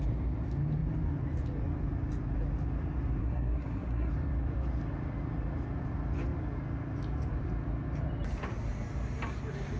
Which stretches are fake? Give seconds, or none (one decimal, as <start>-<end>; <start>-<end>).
3.2-4.1

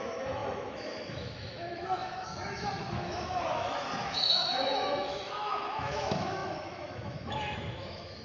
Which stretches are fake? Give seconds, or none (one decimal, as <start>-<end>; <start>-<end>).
0.0-8.2

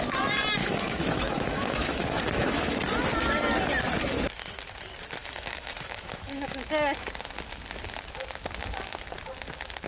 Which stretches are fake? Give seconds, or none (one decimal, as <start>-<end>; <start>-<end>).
0.6-2.8; 5.2-6.7

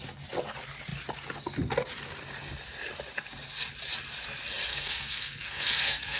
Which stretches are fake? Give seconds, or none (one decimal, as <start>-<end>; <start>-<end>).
4.7-6.2

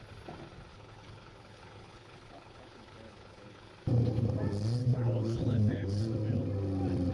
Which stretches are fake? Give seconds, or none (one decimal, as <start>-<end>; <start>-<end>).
0.7-3.7; 4.8-6.0

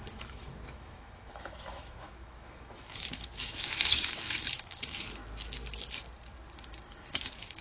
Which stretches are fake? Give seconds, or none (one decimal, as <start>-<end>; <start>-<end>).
0.0-5.2; 6.9-7.6